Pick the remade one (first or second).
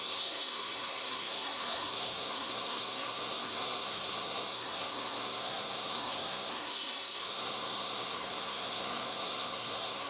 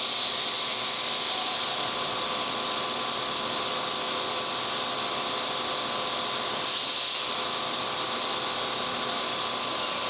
first